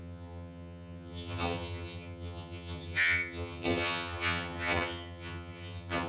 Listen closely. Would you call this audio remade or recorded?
remade